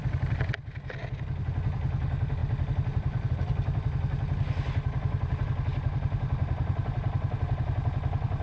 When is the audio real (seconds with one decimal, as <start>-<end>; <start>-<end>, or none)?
0.0-8.4